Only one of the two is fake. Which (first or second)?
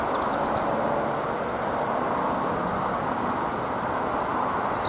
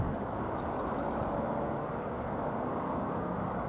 second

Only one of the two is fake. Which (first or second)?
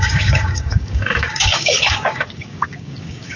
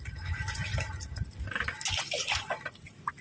first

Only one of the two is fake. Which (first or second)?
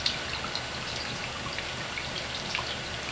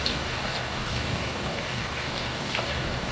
second